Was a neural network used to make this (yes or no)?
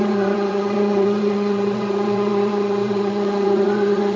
yes